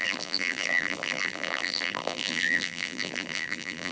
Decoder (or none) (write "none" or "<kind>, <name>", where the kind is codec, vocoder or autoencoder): vocoder, BigVGAN v2